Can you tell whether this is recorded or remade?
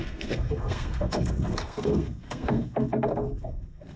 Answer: remade